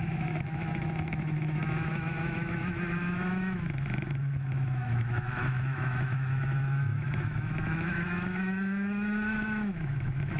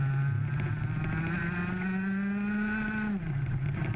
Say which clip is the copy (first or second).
first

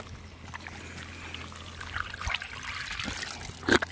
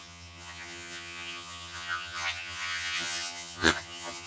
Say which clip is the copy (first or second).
second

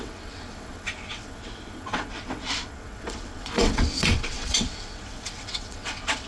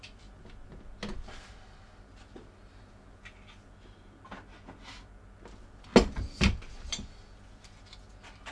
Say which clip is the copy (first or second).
first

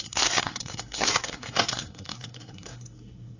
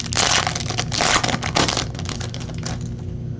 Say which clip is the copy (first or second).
first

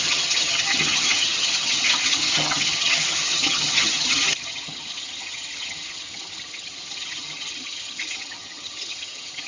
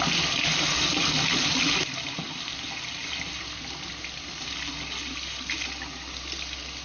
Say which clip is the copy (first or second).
first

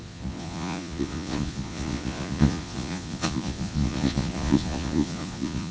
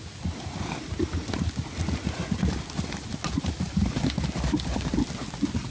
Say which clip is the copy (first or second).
first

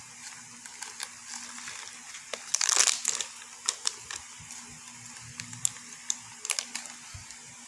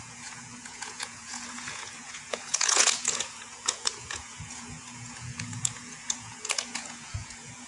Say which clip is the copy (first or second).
second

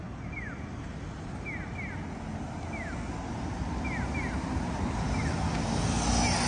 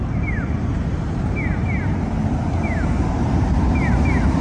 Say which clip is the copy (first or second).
second